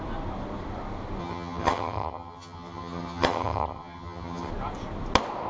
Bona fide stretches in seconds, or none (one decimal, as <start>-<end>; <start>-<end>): 0.0-1.2; 4.5-5.5